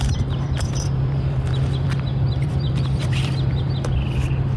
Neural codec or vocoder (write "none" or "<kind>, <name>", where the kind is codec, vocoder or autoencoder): vocoder, BigVGAN v2